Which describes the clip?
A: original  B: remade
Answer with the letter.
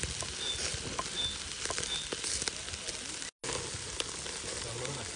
A